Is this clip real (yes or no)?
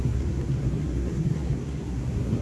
no